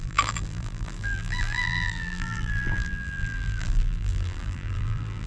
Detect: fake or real fake